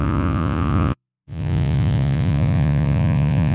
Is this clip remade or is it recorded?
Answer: remade